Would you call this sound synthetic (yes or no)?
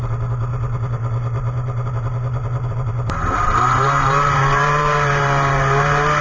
yes